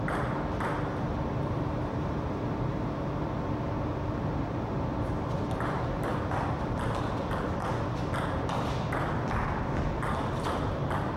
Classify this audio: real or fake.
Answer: real